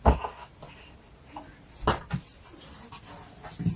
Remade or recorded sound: recorded